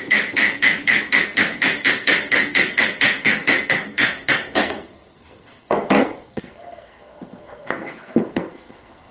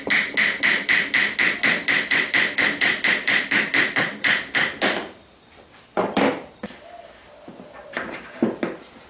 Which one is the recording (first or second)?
second